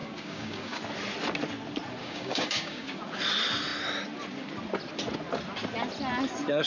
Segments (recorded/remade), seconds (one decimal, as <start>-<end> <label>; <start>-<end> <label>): 0.0-0.8 remade; 0.8-2.0 recorded; 2.0-3.0 remade; 3.0-6.7 recorded